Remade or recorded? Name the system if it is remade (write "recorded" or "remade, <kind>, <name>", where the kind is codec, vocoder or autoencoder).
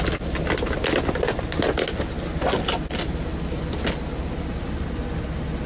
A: recorded